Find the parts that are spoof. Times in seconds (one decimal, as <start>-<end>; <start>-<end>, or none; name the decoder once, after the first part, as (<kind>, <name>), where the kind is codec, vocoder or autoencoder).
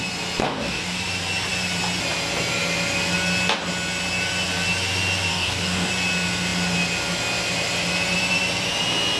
0.4-1.0 (codec, DAC); 5.3-5.9